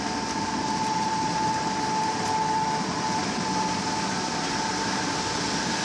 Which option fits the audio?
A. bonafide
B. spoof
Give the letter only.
A